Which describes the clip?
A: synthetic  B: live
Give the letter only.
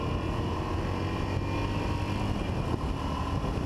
B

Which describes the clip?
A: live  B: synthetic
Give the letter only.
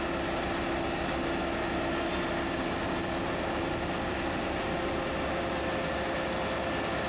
A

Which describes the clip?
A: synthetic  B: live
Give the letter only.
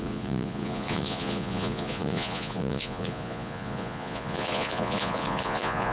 A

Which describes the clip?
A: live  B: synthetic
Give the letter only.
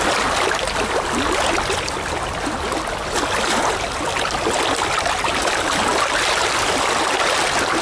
A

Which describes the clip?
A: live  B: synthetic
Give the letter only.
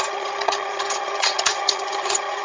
B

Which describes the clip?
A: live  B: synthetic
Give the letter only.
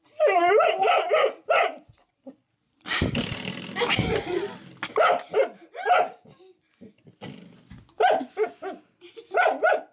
A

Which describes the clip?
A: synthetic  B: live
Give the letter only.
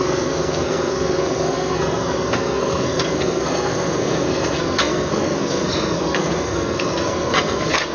A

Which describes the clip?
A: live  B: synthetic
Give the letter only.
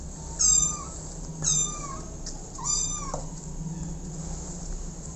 A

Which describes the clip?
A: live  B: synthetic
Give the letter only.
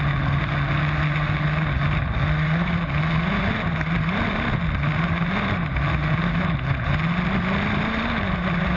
A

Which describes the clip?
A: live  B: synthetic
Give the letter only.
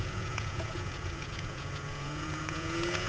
B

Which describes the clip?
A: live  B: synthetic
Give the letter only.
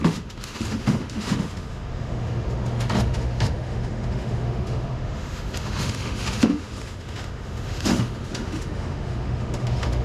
B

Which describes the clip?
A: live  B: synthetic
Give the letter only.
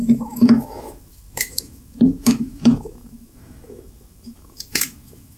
B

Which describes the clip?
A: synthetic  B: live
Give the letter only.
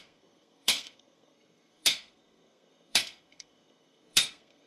A